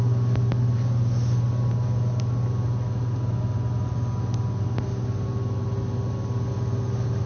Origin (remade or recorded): remade